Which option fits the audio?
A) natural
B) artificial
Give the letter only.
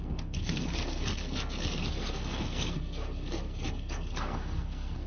B